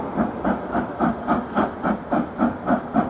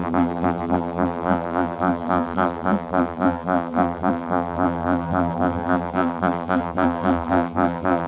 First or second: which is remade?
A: second